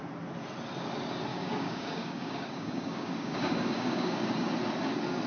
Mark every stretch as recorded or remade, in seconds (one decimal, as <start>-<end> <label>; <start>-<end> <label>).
0.0-1.3 recorded; 1.3-4.5 remade; 4.5-5.3 recorded